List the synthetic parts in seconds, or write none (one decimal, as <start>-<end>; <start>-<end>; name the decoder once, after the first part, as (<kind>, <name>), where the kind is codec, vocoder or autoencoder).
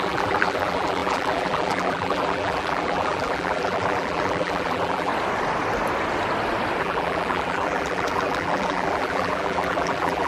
0.0-5.1 (vocoder, BigVGAN v2); 6.8-10.3